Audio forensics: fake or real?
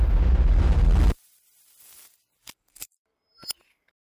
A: fake